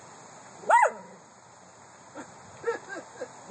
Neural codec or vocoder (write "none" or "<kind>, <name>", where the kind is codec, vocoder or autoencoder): none